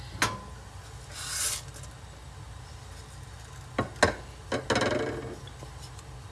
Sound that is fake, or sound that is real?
real